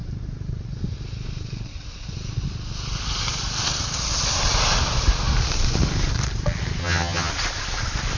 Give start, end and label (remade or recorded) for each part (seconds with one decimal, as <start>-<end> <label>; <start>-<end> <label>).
0.0-6.8 recorded; 6.8-7.3 remade; 7.3-8.2 recorded